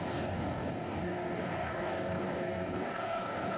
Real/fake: fake